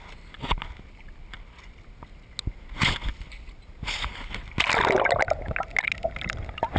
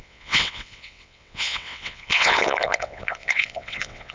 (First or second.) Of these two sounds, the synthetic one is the second